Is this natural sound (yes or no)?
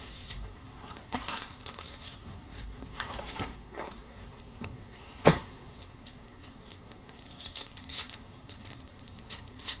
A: no